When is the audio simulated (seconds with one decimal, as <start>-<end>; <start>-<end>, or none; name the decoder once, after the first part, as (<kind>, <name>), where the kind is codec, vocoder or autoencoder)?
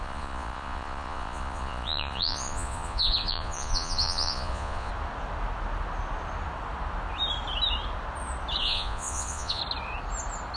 0.0-4.9 (vocoder, Vocos); 8.6-9.6